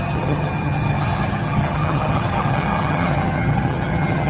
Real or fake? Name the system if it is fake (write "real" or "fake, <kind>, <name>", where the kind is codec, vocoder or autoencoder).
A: fake, vocoder, HiFi-GAN